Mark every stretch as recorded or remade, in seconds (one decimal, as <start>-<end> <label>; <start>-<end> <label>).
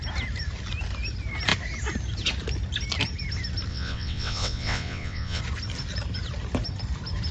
0.0-3.7 recorded; 3.7-5.4 remade; 5.4-7.3 recorded